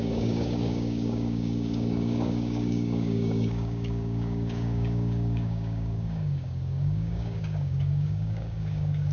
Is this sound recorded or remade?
remade